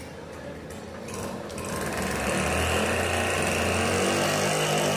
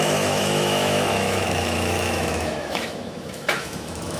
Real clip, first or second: first